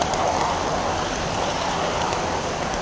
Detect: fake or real fake